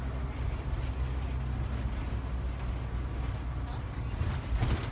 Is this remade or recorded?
recorded